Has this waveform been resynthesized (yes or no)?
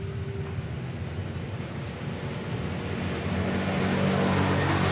no